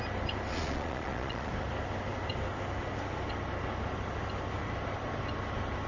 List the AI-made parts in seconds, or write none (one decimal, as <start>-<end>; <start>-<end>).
0.5-1.5